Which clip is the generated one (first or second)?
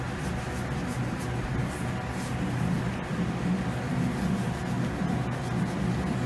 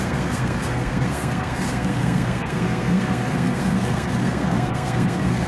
second